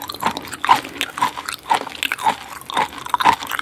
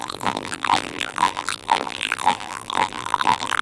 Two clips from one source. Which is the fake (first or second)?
second